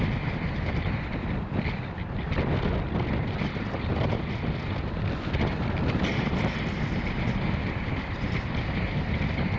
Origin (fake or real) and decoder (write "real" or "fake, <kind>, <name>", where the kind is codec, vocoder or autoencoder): real